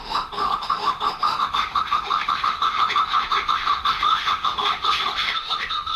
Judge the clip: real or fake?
fake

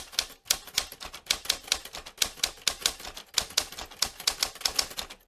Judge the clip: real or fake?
real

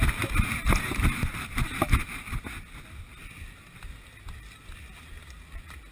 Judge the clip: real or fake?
real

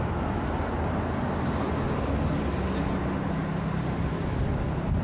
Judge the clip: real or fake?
real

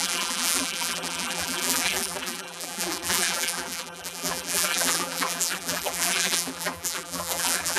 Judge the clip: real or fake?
fake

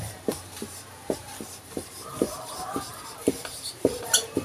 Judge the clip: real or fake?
fake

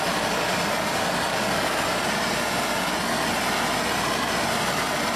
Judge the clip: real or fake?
real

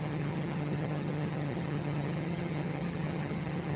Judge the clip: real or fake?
fake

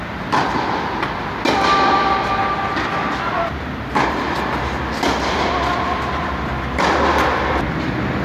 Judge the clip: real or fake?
real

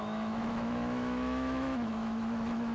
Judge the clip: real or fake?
fake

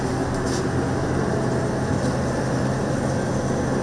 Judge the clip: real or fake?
real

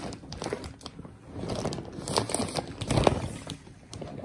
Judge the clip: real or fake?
real